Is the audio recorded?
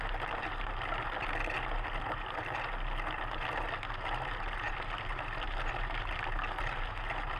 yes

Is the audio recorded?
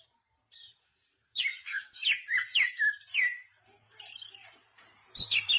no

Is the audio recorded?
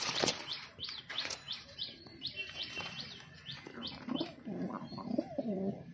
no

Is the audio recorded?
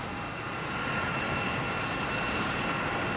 yes